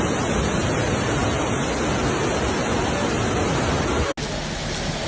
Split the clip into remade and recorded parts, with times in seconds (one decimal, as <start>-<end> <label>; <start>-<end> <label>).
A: 0.0-5.1 recorded